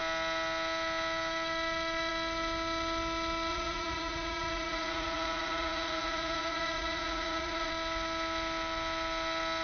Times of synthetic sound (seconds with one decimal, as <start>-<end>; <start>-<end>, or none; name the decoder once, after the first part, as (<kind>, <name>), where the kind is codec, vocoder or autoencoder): 3.5-7.7 (vocoder, Vocos)